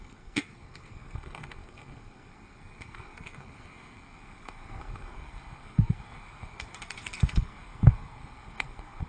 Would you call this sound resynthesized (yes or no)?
yes